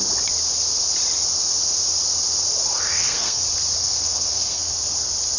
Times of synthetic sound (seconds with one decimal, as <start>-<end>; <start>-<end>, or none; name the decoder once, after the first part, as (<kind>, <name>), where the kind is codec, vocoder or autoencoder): 2.7-3.4 (codec, SNAC); 3.8-4.6